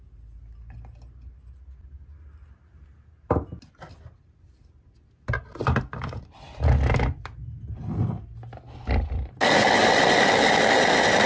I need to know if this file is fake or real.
real